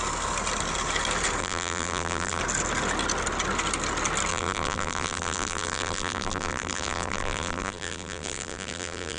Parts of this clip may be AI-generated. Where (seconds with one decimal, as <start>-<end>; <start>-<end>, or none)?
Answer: 1.4-2.4; 4.3-9.2